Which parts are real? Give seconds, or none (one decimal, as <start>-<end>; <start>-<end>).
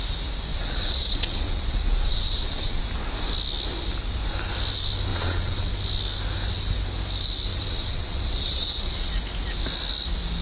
0.0-0.5; 2.8-5.1; 5.7-7.5; 9.1-10.4